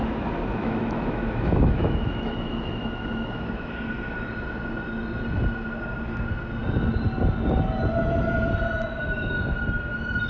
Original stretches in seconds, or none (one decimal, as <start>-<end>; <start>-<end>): 0.0-0.6; 3.7-10.3

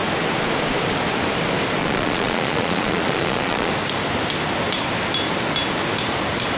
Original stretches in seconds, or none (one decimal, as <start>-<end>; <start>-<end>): 0.0-1.8; 3.7-6.6